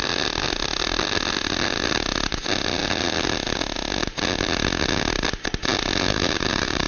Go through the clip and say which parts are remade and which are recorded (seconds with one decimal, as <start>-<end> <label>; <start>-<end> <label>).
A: 0.0-6.1 recorded; 6.1-6.9 remade